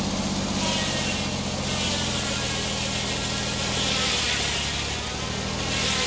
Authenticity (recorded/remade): recorded